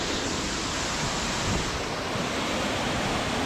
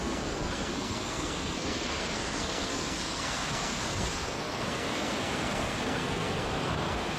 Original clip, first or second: first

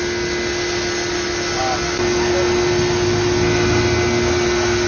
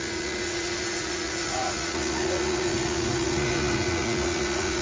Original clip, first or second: first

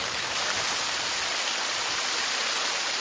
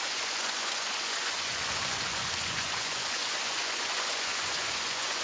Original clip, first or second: first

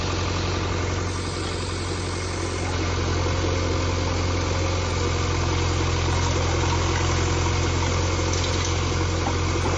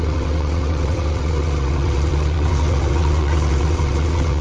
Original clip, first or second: first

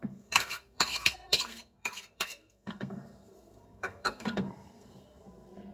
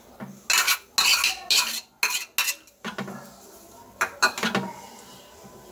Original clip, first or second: second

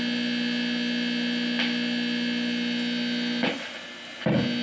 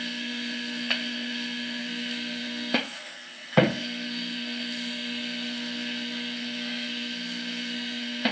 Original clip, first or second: first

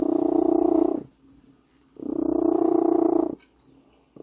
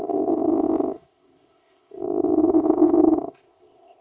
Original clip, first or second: first